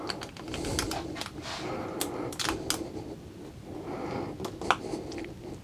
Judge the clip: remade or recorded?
recorded